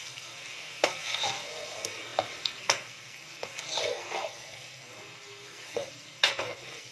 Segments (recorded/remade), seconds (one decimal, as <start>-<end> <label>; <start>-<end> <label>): 0.0-6.9 remade